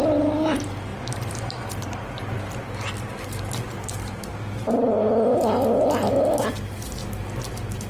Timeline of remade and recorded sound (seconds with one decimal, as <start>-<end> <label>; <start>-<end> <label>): 0.0-0.9 recorded; 0.9-2.4 remade; 2.4-4.3 recorded; 4.3-5.1 remade; 5.1-7.9 recorded